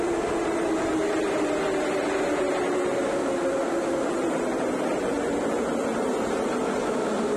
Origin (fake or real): real